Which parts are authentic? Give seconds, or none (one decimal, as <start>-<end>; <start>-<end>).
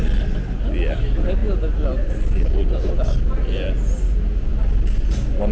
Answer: 0.0-5.5